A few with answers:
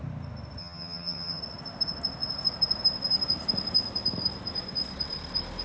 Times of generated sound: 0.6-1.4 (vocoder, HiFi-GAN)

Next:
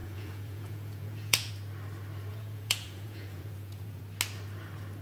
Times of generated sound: 0.0-1.5 (vocoder, Vocos); 2.3-4.0

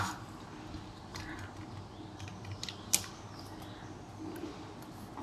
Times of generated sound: none

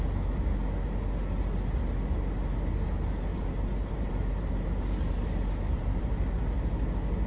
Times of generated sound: 3.3-6.3 (vocoder, BigVGAN v2)